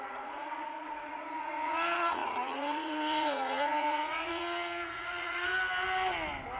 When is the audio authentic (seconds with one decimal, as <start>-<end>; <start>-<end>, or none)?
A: 5.5-6.6

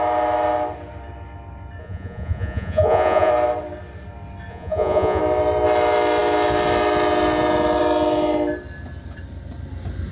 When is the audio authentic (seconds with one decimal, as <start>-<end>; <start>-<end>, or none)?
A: 0.0-1.8; 3.3-4.5; 5.2-10.1

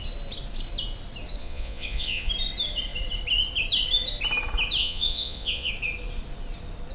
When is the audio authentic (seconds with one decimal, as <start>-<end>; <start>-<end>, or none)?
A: 0.0-1.4; 2.3-4.8; 5.7-6.9

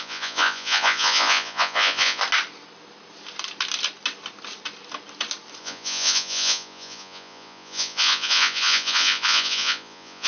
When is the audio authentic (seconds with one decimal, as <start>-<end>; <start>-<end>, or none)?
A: 2.2-5.6

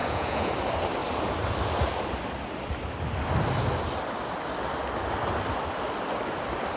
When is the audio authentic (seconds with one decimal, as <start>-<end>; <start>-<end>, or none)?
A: 0.5-6.8

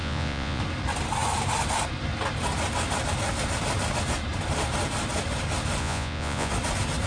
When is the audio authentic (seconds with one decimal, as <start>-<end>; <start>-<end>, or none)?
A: 0.6-5.8; 6.5-7.1

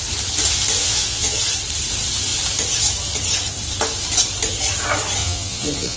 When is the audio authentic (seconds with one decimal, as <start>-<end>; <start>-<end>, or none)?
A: 0.0-0.8; 1.4-5.2

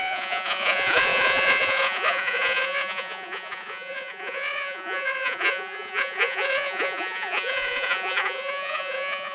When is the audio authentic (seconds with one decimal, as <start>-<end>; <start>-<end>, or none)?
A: none